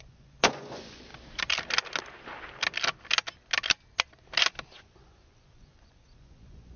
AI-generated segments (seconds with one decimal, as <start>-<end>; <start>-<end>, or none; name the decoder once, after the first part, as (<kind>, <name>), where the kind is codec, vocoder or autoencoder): 0.0-1.1 (vocoder, Vocos); 4.8-6.8